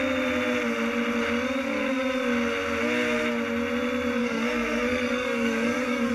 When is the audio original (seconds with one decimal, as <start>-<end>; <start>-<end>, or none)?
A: 0.0-4.2